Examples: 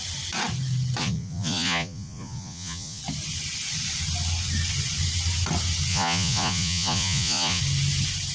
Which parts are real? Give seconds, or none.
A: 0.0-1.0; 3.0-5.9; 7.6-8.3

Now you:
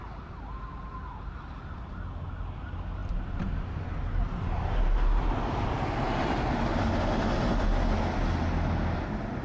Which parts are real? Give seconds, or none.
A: 0.0-9.4